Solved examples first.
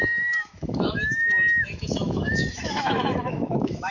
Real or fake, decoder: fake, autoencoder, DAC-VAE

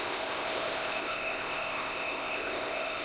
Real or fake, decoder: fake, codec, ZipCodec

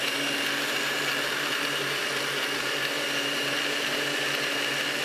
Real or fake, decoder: real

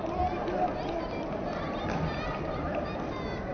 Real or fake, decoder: real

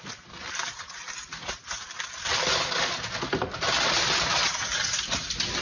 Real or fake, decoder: real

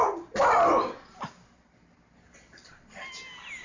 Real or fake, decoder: real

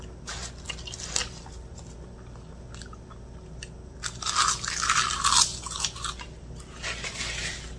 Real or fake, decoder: real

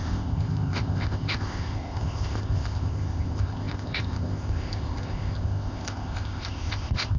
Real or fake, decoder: fake, codec, ZipCodec